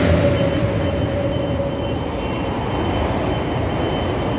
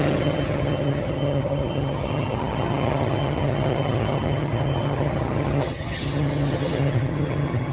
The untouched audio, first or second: first